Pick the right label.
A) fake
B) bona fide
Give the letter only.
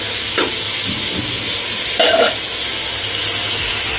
B